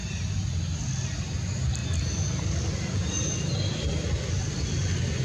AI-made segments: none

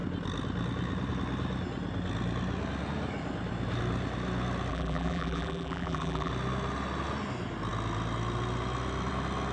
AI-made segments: 4.7-6.3

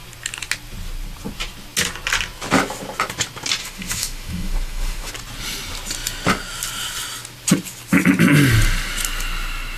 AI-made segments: 3.6-5.1